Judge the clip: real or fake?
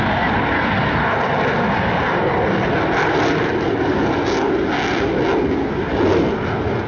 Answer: real